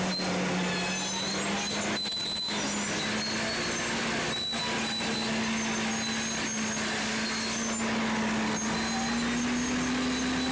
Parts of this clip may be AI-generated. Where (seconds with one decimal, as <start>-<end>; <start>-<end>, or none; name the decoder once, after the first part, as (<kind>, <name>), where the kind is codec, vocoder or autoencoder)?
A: none